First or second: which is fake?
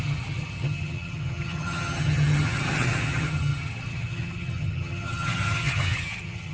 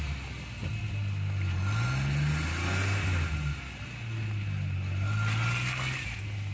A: first